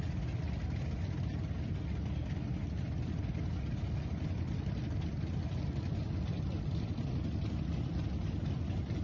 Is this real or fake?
real